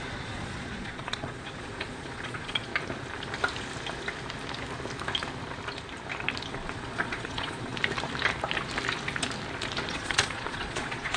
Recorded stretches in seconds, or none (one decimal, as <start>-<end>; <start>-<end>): 2.7-6.5; 7.7-9.9